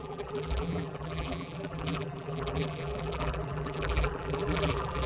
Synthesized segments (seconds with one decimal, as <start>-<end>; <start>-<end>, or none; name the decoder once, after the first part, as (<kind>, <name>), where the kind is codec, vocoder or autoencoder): 0.0-5.1 (vocoder, BigVGAN v2)